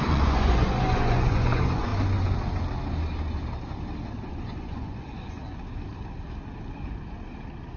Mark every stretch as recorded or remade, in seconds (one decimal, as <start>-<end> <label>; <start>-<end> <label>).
0.0-1.9 remade; 1.9-4.3 recorded; 4.3-5.4 remade; 5.4-7.8 recorded